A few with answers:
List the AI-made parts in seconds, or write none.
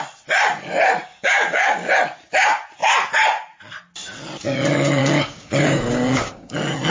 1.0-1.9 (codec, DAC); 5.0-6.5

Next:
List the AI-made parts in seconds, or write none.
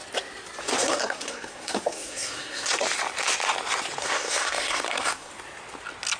0.6-2.8 (codec, SNAC); 4.0-5.3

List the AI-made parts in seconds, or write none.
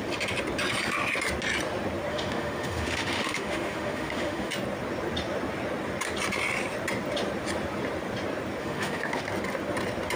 2.1-4.5 (autoencoder, DAC-VAE); 8.6-9.2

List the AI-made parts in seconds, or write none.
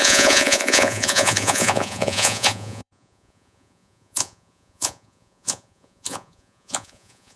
0.0-7.4 (vocoder, Vocos)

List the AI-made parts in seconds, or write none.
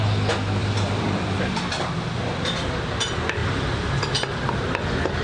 0.6-1.6 (vocoder, BigVGAN v2); 3.4-4.6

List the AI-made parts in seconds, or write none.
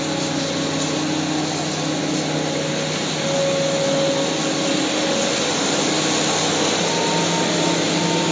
none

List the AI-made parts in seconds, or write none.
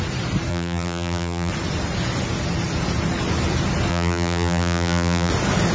0.5-1.5 (vocoder, BigVGAN v2); 3.9-5.3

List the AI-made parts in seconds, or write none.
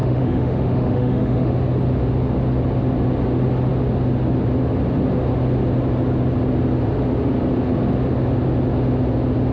0.0-1.5 (autoencoder, DAC-VAE)